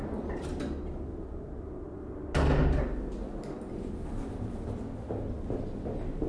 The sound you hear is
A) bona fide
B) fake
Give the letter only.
A